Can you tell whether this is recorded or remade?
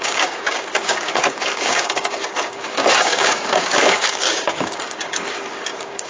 remade